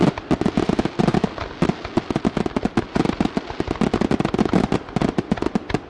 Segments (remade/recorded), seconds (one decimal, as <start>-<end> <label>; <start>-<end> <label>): 0.0-5.9 recorded